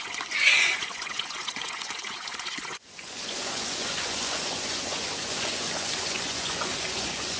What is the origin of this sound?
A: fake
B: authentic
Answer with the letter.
A